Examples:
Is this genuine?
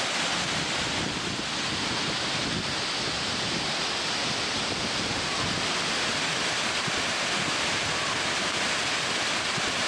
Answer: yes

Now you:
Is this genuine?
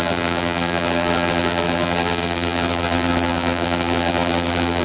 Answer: no